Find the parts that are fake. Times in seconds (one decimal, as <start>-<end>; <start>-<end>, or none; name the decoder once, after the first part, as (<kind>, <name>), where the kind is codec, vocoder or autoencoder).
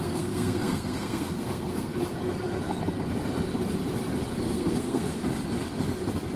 0.0-1.9 (codec, SNAC); 4.4-5.2